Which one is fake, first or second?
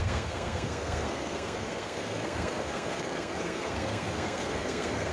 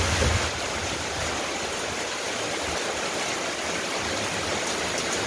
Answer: first